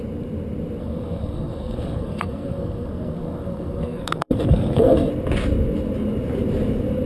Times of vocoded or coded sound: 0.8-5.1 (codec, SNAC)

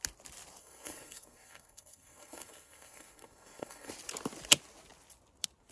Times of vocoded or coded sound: 0.6-3.9 (codec, SNAC)

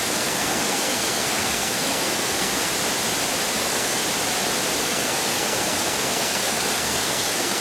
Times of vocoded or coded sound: 0.0-2.7 (codec, SNAC); 3.6-4.0; 4.8-7.6

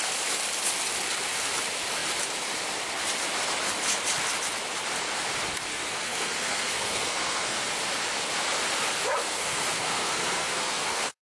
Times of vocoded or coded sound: 5.7-7.7 (codec, SNAC); 9.2-11.2